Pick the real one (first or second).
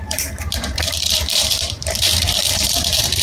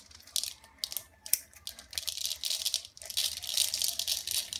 second